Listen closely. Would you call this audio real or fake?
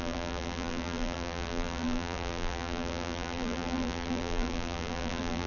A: fake